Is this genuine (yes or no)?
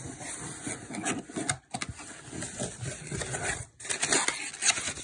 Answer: yes